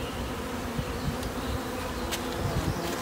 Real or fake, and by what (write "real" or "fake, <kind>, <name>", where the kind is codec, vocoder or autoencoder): real